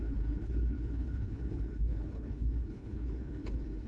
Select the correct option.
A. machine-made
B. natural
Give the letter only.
A